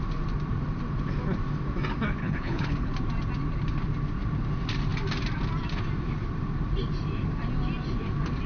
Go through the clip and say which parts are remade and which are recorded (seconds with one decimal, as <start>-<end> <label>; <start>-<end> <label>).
0.0-2.2 recorded; 2.2-2.9 remade; 2.9-8.5 recorded